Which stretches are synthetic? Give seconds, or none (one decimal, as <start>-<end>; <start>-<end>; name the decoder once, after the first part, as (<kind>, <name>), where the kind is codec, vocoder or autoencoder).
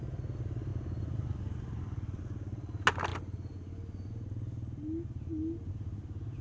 none